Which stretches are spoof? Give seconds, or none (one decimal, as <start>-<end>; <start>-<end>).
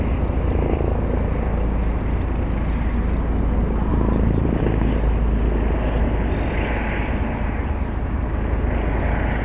none